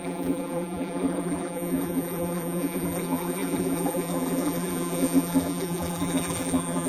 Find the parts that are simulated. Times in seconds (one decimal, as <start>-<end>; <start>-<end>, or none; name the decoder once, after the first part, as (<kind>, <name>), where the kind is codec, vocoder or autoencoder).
0.0-6.9 (vocoder, BigVGAN v2)